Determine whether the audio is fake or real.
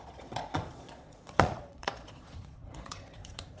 fake